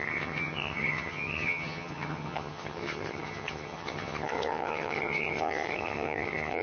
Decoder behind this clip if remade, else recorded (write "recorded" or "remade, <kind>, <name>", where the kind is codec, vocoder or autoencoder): remade, vocoder, HiFi-GAN